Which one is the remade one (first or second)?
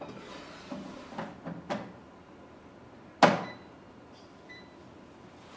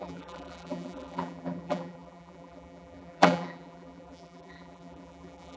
second